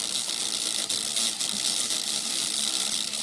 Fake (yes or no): no